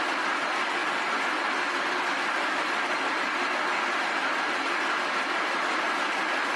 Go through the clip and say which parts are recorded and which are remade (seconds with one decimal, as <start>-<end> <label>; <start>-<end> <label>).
0.0-6.6 recorded